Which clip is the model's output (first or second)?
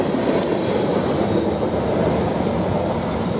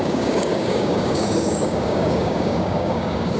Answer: second